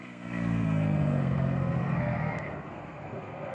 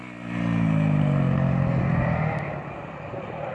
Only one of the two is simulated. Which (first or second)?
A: first